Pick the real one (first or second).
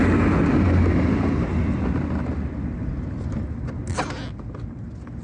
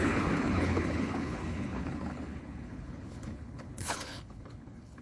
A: first